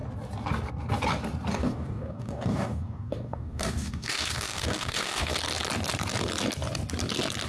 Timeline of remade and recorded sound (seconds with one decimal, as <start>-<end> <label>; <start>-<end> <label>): 0.0-1.5 recorded; 1.5-5.3 remade; 5.3-7.5 recorded